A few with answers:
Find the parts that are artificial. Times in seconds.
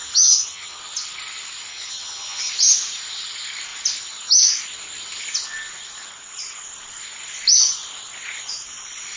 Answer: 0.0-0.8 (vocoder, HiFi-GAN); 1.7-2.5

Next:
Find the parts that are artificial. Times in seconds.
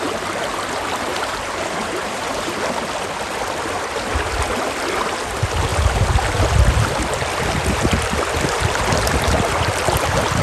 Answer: 1.1-2.6 (vocoder, BigVGAN v2)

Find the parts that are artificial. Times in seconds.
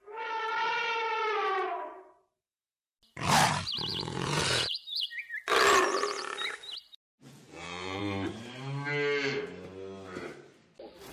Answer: 3.9-5.3 (vocoder, Vocos); 7.2-8.0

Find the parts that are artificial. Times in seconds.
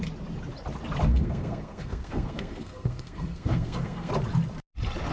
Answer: 1.1-4.1 (codec, SNAC)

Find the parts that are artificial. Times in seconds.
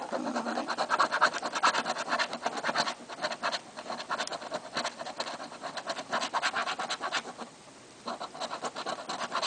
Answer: none